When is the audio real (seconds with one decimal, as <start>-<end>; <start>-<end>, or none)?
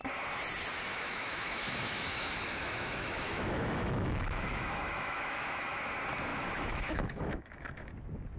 0.0-0.9; 5.8-6.3; 7.9-8.4